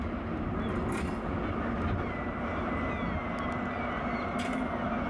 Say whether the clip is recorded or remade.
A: recorded